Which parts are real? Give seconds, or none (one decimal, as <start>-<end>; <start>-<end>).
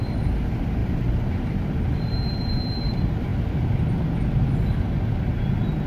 0.0-0.8; 2.9-5.9